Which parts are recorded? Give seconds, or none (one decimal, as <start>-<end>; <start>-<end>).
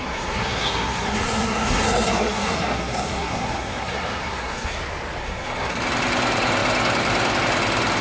4.8-5.2; 5.8-8.0